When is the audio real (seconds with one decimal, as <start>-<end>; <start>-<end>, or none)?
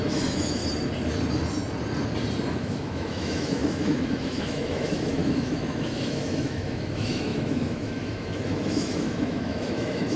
0.6-2.5